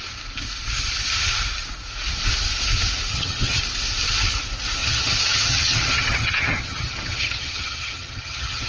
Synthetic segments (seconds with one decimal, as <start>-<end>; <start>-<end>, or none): 3.1-3.6; 4.8-8.7